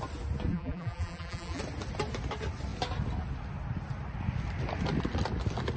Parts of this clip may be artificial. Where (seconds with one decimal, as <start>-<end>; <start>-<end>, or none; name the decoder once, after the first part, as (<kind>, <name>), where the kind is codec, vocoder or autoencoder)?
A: 0.5-1.6 (vocoder, BigVGAN v2)